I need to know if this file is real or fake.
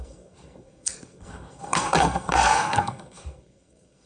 fake